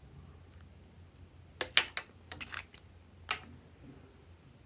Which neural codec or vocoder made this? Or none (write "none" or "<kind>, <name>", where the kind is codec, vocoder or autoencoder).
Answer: none